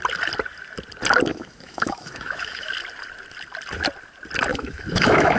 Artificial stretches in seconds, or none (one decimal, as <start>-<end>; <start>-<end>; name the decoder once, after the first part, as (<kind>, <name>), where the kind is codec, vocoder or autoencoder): 1.3-2.7 (autoencoder, DAC-VAE); 4.5-5.4